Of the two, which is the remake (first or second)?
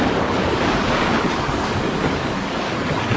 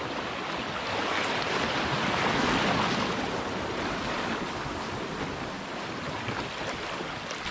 first